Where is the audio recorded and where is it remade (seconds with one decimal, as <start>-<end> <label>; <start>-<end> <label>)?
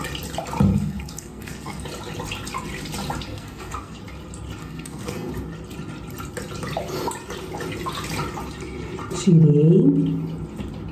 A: 0.0-0.7 recorded; 0.7-1.8 remade; 1.8-3.3 recorded; 3.3-4.0 remade; 4.0-4.6 recorded; 4.6-5.3 remade; 5.3-10.9 recorded